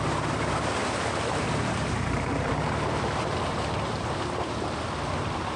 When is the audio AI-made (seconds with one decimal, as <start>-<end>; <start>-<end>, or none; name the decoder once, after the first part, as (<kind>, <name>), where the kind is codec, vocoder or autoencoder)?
0.8-4.2 (vocoder, BigVGAN v2)